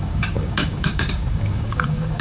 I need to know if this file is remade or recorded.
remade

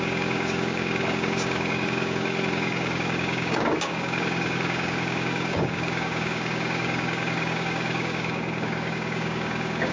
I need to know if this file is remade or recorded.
remade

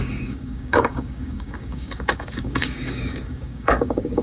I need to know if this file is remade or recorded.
remade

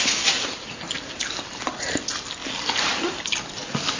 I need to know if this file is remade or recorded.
recorded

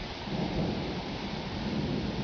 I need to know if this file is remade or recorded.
recorded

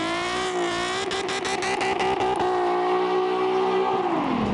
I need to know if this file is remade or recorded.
recorded